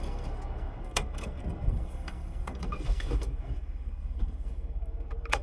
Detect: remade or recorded remade